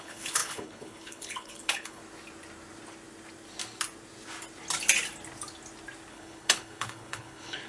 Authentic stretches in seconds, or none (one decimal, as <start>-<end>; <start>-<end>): 2.0-6.1